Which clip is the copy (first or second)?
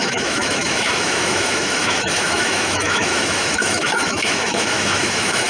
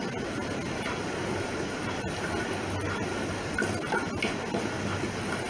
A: first